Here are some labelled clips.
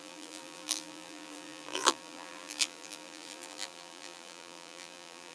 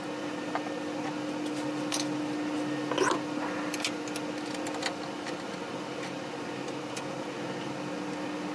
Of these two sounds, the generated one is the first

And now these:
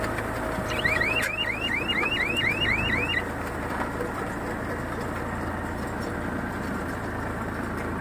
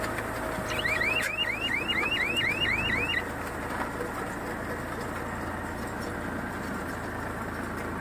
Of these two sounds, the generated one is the first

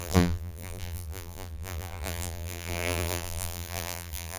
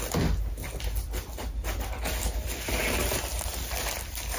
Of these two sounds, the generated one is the first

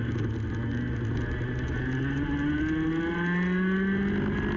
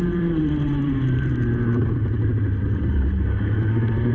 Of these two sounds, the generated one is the second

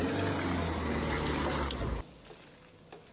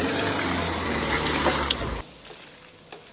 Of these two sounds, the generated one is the second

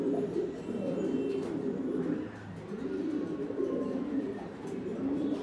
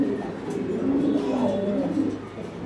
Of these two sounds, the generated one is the first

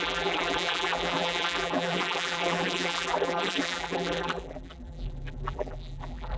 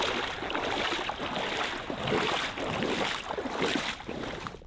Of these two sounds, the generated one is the first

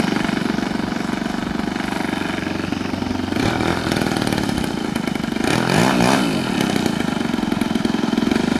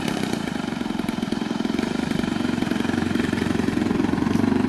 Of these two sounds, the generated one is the second